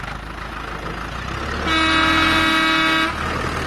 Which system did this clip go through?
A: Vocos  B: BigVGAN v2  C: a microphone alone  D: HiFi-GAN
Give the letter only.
C